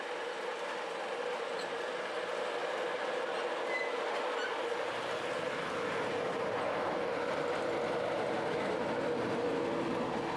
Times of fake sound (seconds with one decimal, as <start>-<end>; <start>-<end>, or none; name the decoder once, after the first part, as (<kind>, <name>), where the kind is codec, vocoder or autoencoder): none